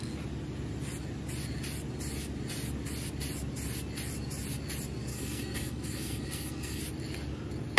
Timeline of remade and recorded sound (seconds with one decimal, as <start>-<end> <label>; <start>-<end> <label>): 0.0-5.1 recorded; 5.1-6.8 remade; 6.8-7.8 recorded